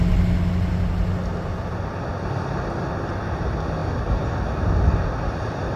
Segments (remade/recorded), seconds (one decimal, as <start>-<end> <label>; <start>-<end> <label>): 0.0-5.8 recorded

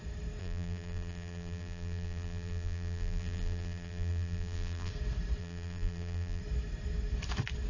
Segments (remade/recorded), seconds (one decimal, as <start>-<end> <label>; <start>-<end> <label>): 0.0-0.4 recorded; 0.4-4.9 remade; 4.9-5.4 recorded; 5.4-6.4 remade; 6.4-7.7 recorded

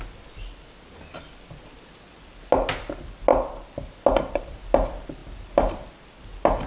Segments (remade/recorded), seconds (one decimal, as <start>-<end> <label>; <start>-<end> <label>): 0.0-6.7 recorded

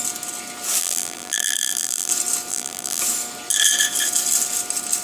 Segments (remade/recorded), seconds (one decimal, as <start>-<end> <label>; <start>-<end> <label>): 0.0-0.8 recorded; 0.8-2.1 remade; 2.1-2.5 recorded; 2.5-3.0 remade; 3.0-5.0 recorded

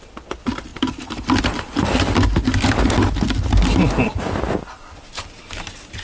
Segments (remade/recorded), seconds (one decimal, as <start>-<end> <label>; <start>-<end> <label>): 0.0-0.7 recorded; 0.7-1.2 remade; 1.2-6.0 recorded